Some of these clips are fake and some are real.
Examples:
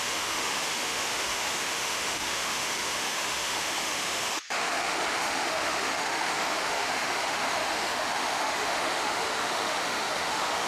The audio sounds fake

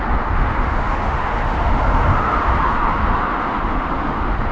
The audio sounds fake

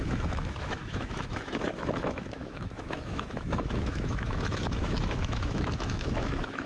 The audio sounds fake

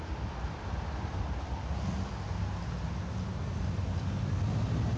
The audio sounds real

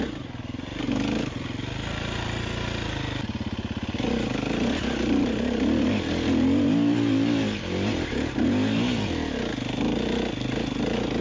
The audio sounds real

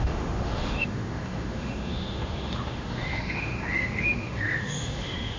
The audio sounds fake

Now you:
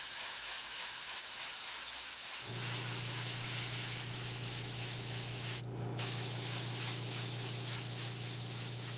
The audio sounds fake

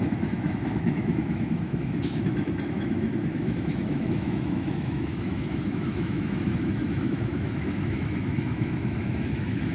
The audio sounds fake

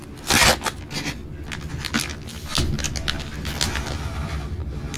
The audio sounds real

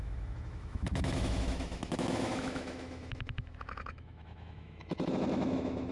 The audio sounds fake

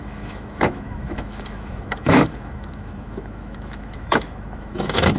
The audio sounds fake